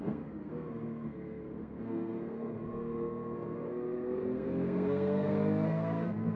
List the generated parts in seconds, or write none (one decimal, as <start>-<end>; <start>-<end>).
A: 0.0-6.4